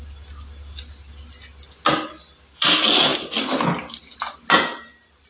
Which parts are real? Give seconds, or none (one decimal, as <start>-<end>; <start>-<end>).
0.0-5.3